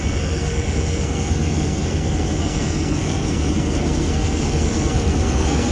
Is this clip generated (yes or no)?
yes